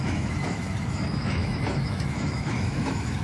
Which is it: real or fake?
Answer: fake